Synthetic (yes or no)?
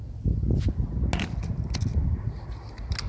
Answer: no